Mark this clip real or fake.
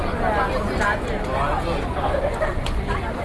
real